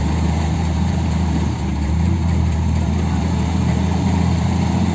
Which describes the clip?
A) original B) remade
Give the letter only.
B